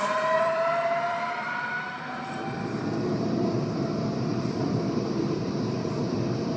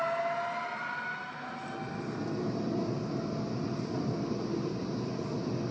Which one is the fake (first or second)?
first